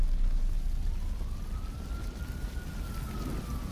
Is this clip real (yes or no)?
yes